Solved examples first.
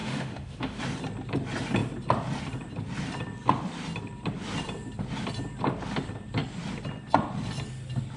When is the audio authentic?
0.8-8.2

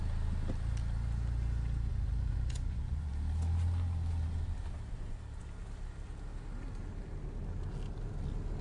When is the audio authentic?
0.0-1.9; 3.1-8.6

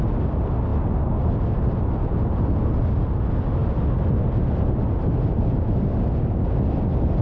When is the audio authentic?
0.0-7.2

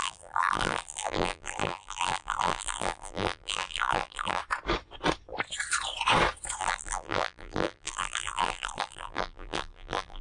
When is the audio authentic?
4.4-6.6

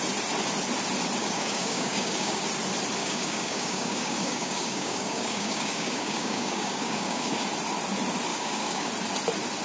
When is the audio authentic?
0.0-1.2; 2.4-3.0; 7.3-8.3; 8.9-9.6